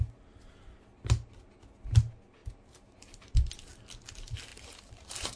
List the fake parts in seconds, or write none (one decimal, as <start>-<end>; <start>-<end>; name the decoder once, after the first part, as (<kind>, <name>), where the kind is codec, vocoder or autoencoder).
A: 2.4-3.5 (vocoder, BigVGAN v2); 4.5-5.4